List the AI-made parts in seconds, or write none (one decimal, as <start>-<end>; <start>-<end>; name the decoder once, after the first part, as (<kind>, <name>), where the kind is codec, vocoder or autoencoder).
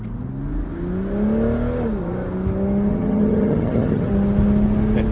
2.9-4.1 (vocoder, HiFi-GAN)